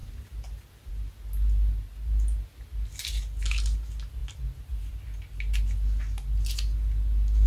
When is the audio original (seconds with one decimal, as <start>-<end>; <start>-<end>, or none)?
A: 0.0-7.5